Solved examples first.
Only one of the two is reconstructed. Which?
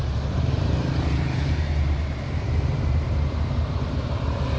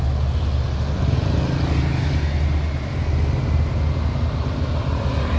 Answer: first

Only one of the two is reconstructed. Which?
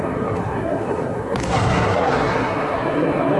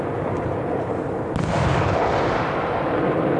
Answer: first